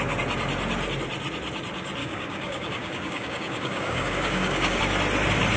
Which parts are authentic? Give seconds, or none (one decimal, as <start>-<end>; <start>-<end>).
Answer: 0.0-2.0; 4.8-5.6